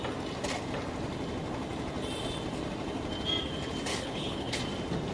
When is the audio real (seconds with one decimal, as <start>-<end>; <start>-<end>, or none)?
0.0-3.9; 4.6-5.1